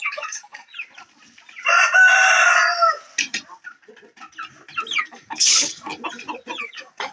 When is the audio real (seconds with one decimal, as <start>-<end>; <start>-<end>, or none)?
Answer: 0.7-5.0; 5.9-6.6